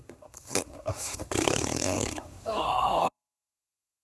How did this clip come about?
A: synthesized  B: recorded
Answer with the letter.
A